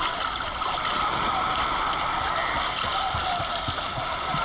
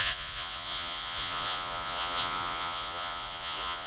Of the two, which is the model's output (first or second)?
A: second